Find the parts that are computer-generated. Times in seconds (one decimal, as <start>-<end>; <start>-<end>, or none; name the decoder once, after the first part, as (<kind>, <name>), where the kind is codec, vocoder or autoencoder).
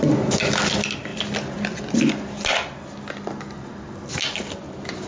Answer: none